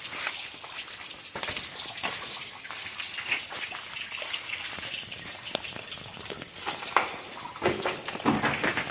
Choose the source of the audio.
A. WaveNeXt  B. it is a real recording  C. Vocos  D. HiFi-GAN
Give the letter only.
B